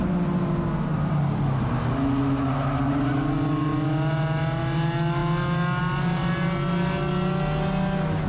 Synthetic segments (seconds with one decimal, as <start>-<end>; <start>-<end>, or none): none